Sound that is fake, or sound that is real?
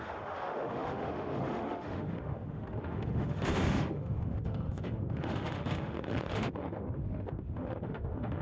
fake